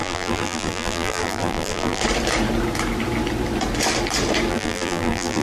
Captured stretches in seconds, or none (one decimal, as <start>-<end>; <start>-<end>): 2.0-4.5

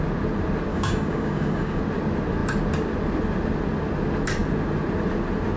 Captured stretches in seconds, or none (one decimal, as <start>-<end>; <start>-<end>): 0.0-0.7; 1.8-5.6

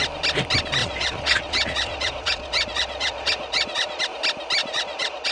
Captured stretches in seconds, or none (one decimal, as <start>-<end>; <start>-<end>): 0.0-0.8; 4.0-4.6

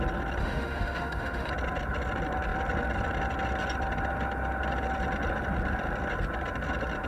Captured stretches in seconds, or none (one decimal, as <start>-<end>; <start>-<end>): 0.0-0.4; 1.5-7.1

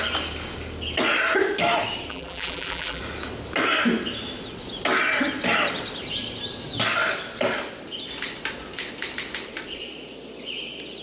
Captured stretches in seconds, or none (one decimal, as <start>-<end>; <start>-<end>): 0.0-2.1; 3.0-11.0